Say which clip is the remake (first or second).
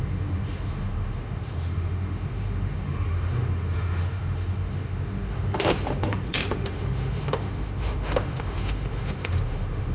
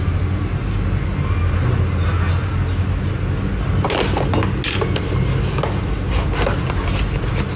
first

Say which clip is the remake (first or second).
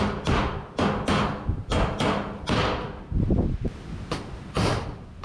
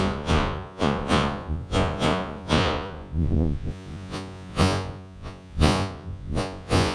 second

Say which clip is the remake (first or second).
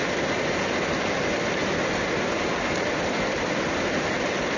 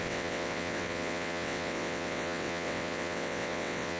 second